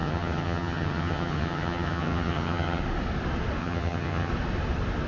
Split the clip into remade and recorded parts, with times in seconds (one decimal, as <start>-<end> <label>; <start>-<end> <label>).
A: 0.0-2.8 remade; 2.8-3.6 recorded; 3.6-4.3 remade; 4.3-5.1 recorded